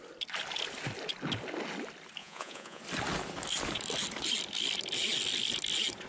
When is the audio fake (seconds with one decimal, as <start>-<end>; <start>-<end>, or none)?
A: 2.2-2.8